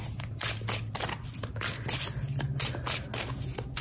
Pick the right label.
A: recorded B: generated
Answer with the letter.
A